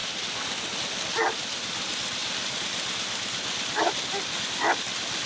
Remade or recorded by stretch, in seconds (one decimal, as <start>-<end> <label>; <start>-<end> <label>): 0.0-5.3 recorded